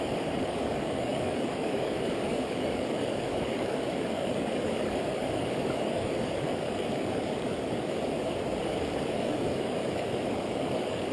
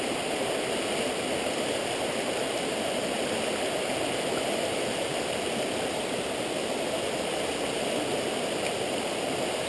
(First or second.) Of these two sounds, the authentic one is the second